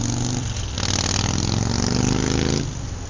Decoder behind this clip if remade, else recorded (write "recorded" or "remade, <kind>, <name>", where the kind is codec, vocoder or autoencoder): recorded